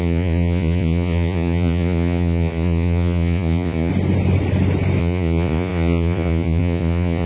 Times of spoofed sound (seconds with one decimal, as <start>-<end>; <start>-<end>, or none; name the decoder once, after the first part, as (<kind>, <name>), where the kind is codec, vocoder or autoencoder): 0.0-3.9 (vocoder, Vocos); 5.0-7.3